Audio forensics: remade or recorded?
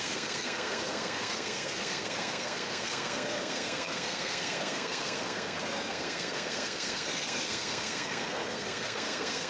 remade